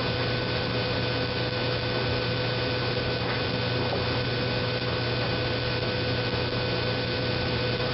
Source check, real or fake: real